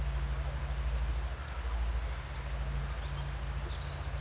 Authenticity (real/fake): real